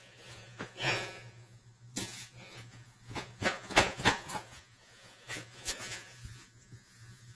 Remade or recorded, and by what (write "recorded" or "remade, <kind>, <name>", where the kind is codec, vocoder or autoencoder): remade, vocoder, Vocos